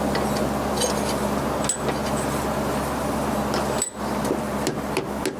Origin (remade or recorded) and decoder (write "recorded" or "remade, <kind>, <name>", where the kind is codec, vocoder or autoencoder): recorded